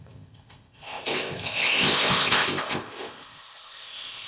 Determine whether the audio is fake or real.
fake